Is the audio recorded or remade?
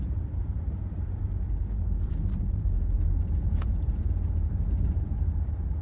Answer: remade